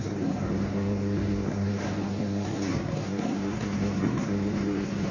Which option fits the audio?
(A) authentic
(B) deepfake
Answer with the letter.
B